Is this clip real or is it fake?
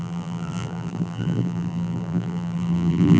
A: fake